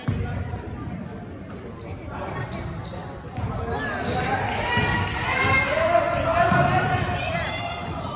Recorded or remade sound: recorded